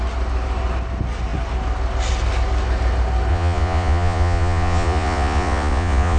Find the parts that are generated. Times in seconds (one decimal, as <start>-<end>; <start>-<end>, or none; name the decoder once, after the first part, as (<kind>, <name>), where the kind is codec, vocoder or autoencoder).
3.3-6.2 (vocoder, Vocos)